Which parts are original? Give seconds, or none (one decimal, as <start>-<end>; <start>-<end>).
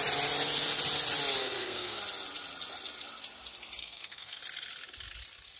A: 0.0-1.4; 2.0-3.8; 4.4-5.6